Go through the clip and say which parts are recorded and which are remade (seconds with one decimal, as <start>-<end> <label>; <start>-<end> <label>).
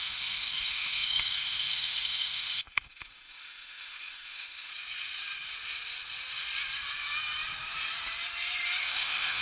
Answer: 0.0-4.7 remade; 4.7-8.8 recorded; 8.8-9.4 remade